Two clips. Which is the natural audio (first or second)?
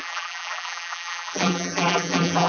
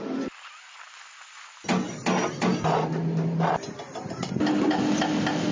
second